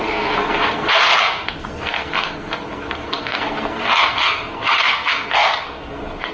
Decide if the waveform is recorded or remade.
remade